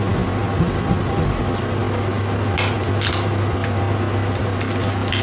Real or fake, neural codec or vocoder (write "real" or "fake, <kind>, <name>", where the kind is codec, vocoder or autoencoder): real